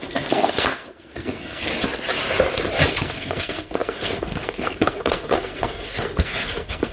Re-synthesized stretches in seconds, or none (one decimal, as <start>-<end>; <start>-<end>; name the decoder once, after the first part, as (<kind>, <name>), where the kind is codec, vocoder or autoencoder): 0.0-1.7 (codec, SNAC); 2.9-6.9